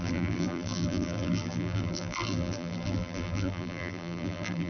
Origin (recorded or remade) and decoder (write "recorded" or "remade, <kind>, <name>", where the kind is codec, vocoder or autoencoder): remade, vocoder, BigVGAN v2